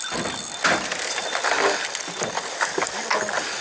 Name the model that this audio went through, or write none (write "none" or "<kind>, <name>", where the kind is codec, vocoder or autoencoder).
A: none